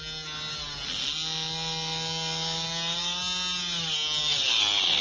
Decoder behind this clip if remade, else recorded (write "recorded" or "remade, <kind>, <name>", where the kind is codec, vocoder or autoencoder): recorded